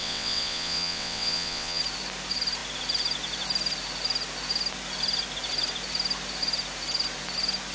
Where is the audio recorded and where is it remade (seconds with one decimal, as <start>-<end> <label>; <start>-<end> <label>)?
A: 0.0-1.8 remade; 1.8-7.7 recorded